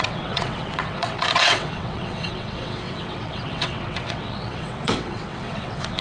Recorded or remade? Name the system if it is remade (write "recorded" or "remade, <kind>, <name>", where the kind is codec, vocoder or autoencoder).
remade, vocoder, WaveNeXt